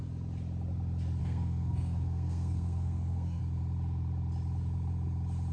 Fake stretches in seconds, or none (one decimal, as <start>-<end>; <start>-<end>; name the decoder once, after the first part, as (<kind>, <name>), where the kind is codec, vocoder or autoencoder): 1.2-3.4 (codec, SNAC)